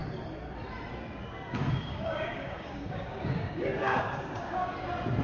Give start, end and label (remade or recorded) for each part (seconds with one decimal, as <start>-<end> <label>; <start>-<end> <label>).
0.0-1.6 recorded; 1.6-4.7 remade; 4.7-5.2 recorded